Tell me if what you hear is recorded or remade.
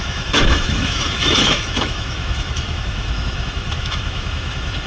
remade